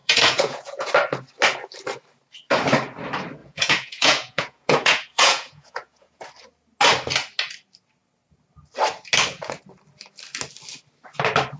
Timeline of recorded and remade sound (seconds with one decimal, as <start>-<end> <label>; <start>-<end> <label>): 0.0-0.9 remade; 0.9-3.4 recorded; 3.4-6.2 remade; 6.2-11.6 recorded